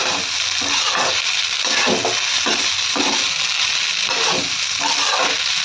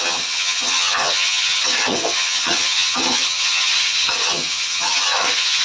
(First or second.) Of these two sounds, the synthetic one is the second